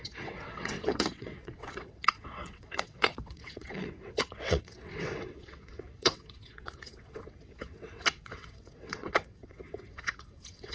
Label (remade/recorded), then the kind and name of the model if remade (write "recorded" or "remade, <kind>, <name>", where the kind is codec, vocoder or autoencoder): remade, vocoder, WaveNeXt